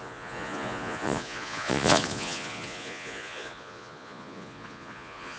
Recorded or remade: remade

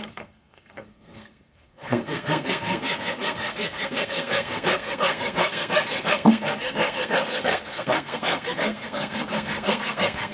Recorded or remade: remade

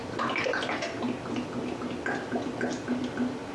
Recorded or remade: recorded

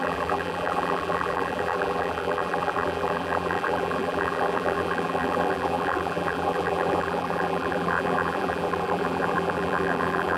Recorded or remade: remade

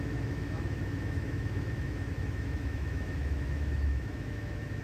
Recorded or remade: remade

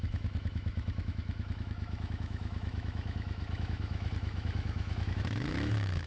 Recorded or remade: remade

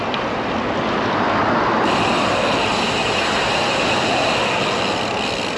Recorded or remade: recorded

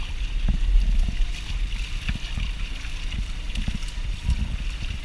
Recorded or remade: recorded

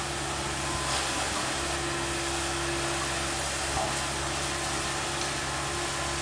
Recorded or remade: recorded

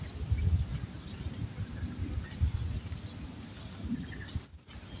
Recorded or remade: recorded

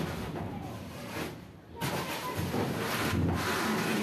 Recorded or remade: recorded